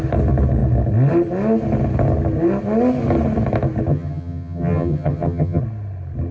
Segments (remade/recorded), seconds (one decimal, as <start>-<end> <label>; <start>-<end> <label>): 0.0-3.9 recorded; 3.9-5.6 remade; 5.6-6.3 recorded